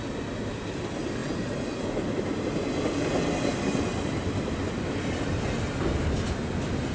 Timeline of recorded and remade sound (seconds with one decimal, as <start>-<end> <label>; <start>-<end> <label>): 0.0-6.9 recorded